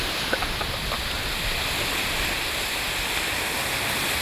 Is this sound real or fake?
real